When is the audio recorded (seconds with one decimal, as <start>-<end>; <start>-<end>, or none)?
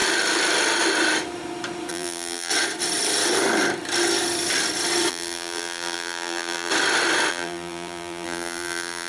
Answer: 0.0-1.9; 2.5-5.1; 6.7-7.3